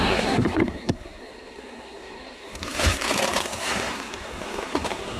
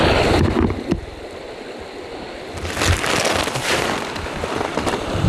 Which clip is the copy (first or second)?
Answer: first